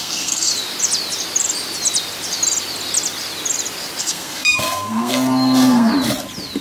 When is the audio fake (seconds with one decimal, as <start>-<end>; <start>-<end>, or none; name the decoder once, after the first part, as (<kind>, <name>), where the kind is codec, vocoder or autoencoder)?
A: 0.0-0.5 (codec, SNAC); 4.0-5.9